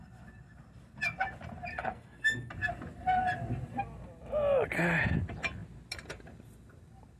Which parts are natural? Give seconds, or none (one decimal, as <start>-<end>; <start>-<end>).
0.0-1.7; 2.5-7.2